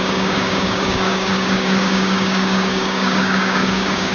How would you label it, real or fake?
fake